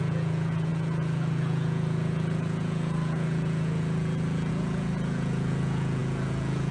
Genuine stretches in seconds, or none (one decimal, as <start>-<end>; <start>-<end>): none